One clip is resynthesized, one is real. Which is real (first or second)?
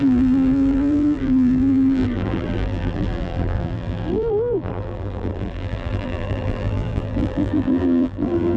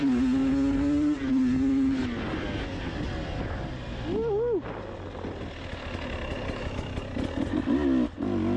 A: second